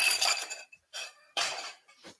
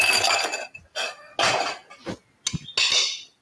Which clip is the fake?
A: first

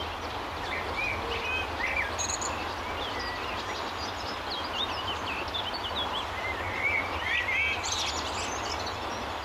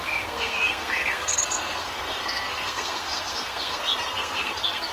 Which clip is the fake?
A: second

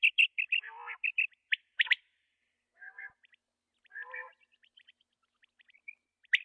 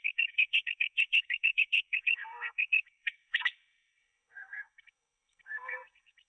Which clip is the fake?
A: second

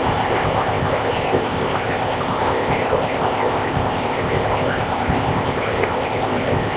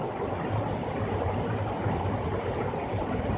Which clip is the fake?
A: first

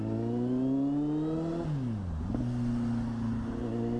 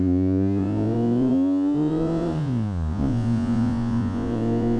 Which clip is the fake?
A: second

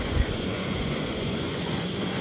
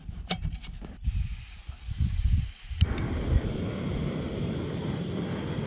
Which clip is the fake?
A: first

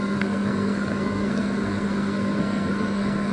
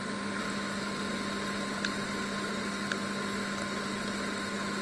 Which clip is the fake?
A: first